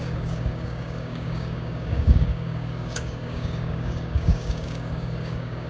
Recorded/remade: remade